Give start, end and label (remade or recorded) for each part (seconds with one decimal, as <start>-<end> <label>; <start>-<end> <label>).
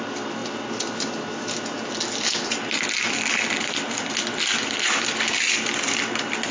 0.0-6.5 recorded